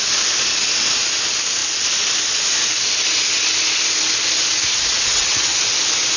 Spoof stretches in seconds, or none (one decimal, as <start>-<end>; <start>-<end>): 4.9-5.5